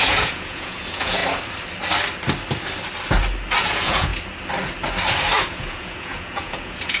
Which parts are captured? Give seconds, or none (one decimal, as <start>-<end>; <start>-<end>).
1.2-3.6; 4.1-5.4